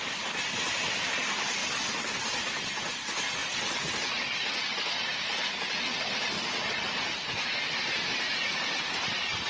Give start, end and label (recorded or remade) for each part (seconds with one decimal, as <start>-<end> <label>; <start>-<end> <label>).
0.0-3.4 recorded; 3.4-7.6 remade; 7.6-9.5 recorded